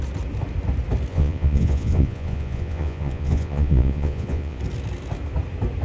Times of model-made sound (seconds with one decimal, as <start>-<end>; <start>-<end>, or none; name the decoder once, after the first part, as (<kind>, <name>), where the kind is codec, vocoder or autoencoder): 1.1-4.6 (vocoder, Vocos)